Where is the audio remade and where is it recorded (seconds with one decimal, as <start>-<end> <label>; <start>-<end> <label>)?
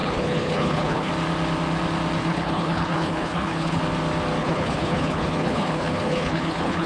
0.0-1.1 remade; 1.1-2.2 recorded; 2.2-3.8 remade; 3.8-4.4 recorded; 4.4-6.9 remade